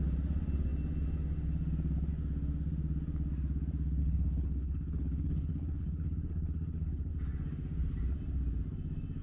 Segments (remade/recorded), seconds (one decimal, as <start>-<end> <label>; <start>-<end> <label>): 0.0-4.0 recorded; 4.0-7.1 remade; 7.1-9.2 recorded

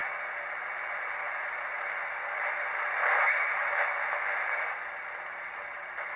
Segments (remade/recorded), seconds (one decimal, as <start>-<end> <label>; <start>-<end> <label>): 0.0-6.2 recorded

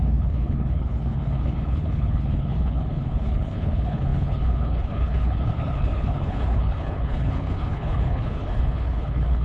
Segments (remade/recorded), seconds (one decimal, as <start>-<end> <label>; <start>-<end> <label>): 0.0-9.4 remade

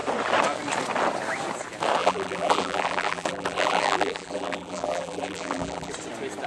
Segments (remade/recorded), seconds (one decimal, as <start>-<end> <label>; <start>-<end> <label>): 0.0-2.0 recorded; 2.0-5.9 remade; 5.9-6.5 recorded

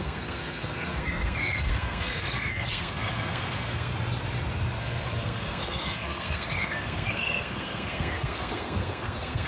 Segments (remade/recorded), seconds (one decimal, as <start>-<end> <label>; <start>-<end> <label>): 0.0-3.9 remade; 3.9-4.8 recorded; 4.8-9.5 remade